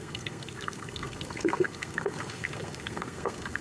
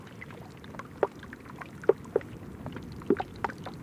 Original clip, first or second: second